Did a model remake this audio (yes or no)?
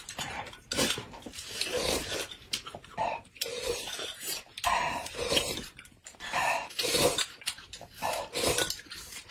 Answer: yes